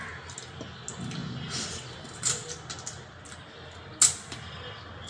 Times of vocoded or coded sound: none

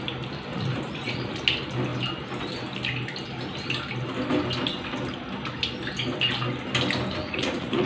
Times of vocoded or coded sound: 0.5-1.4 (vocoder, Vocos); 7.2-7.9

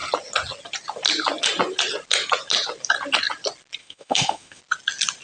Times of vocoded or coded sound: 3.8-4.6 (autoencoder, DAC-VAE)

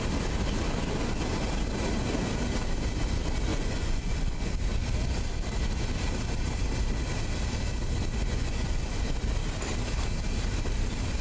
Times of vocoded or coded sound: 3.5-4.5 (vocoder, Vocos); 8.2-9.0

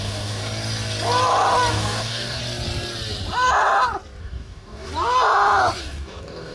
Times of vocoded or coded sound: 0.0-0.4 (codec, DAC); 1.7-2.4; 4.2-4.9; 5.8-6.5

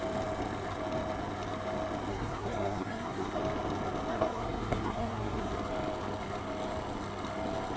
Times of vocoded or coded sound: 2.1-3.4 (codec, SNAC); 4.1-5.5

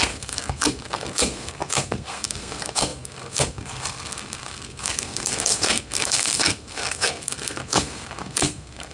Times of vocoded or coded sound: 0.0-8.9 (codec, SNAC)

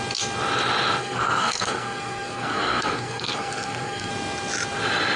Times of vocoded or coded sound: 1.0-4.1 (codec, SNAC)